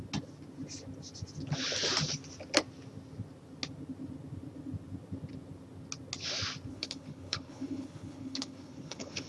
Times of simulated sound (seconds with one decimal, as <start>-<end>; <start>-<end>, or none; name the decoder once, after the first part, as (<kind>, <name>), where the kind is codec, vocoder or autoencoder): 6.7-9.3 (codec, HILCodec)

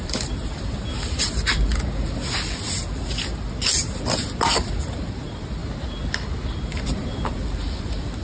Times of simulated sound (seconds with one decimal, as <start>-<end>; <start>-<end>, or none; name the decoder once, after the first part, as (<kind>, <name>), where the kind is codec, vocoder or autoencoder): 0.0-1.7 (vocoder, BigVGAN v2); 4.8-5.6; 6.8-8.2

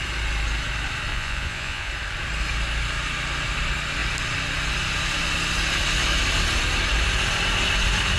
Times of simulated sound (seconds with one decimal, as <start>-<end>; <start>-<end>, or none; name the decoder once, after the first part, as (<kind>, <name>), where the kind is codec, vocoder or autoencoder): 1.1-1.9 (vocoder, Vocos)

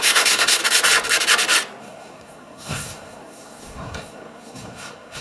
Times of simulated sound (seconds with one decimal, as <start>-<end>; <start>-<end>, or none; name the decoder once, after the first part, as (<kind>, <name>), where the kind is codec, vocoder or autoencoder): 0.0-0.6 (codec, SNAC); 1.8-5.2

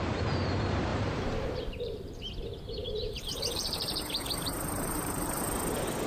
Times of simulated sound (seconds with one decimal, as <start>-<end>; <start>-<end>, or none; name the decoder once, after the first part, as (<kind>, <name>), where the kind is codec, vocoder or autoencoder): 0.9-2.3 (vocoder, BigVGAN v2); 2.8-5.4

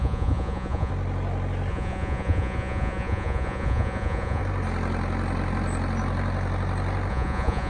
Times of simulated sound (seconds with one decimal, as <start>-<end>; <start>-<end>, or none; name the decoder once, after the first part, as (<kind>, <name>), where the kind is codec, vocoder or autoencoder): 0.0-0.9 (vocoder, Vocos); 1.7-4.4; 7.1-7.7